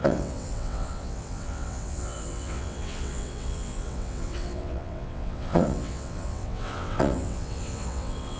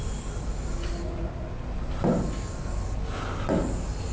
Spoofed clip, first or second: first